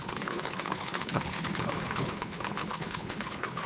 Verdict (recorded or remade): remade